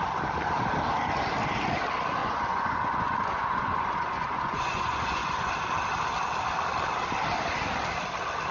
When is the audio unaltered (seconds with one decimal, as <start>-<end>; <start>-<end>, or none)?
0.0-2.2; 5.5-8.5